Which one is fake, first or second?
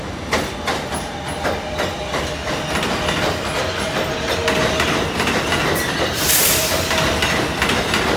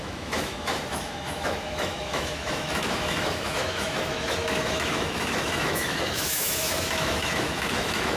second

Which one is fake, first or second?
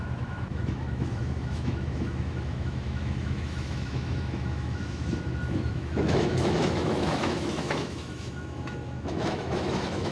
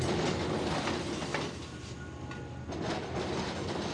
first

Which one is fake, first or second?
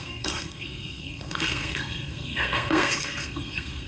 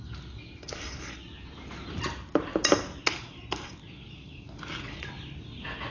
first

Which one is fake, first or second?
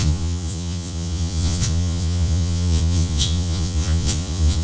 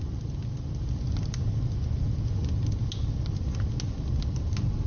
first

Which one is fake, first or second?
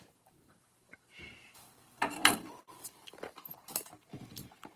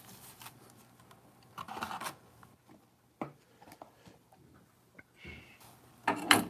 first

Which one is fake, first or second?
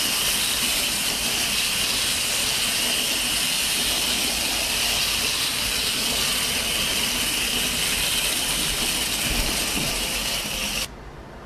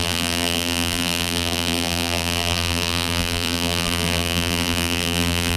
second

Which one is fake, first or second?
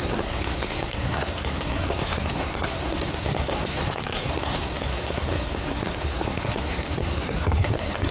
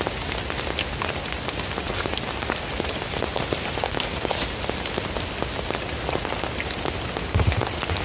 first